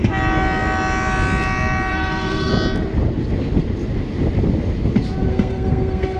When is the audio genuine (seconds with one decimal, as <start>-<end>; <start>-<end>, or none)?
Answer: 0.0-1.9; 2.5-5.3